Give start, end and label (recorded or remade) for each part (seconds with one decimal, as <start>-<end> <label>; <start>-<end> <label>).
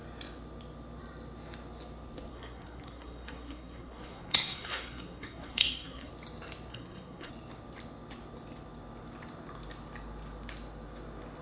0.0-2.3 recorded; 2.3-6.1 remade; 6.1-6.7 recorded; 6.7-7.3 remade; 7.3-11.4 recorded